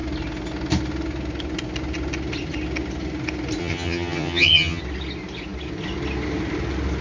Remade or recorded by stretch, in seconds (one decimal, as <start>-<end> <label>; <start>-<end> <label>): 0.0-3.6 recorded; 3.6-4.8 remade; 4.8-7.0 recorded